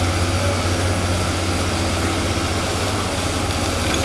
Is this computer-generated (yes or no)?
no